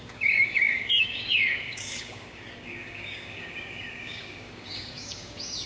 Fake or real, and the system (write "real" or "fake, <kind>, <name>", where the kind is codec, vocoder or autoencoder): fake, codec, DAC